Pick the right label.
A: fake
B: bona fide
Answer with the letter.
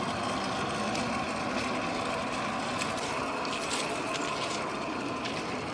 B